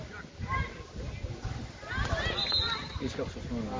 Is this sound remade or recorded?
recorded